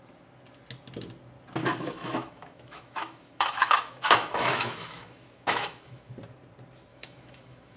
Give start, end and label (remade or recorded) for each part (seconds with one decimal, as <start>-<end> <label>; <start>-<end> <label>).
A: 0.0-1.6 recorded; 1.6-6.1 remade; 6.1-6.9 recorded; 6.9-7.8 remade